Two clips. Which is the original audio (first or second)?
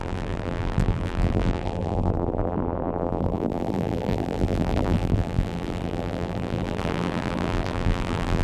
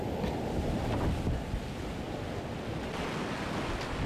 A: second